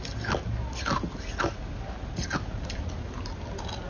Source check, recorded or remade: recorded